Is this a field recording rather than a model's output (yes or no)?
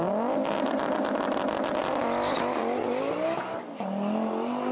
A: yes